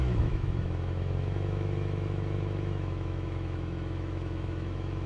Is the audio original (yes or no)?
no